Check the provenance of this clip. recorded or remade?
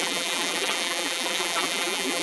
remade